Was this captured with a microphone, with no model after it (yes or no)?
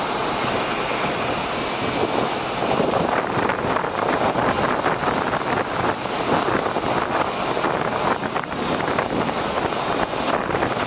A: yes